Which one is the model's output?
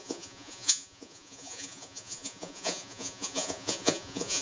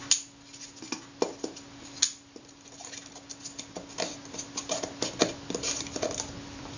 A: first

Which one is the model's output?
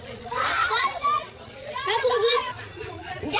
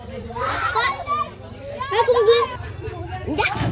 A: first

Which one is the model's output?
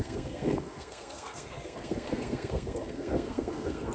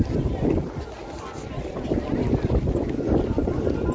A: first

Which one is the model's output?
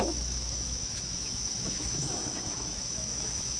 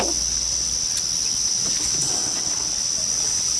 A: first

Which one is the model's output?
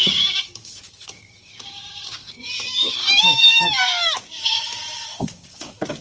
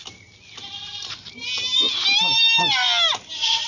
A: first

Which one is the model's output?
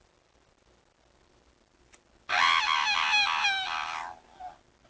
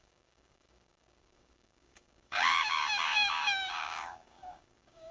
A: second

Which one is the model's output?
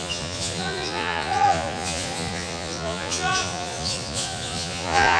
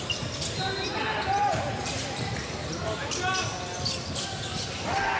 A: first